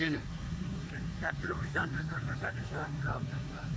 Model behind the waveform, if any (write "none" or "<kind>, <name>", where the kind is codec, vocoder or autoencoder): codec, SNAC